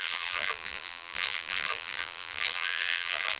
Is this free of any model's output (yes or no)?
no